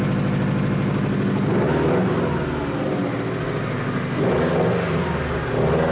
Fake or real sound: real